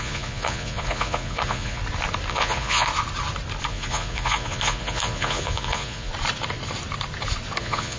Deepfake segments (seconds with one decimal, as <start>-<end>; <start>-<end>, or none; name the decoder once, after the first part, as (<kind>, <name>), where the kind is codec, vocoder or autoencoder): 0.0-1.8 (vocoder, Vocos); 2.3-2.9; 3.7-6.1; 7.6-8.0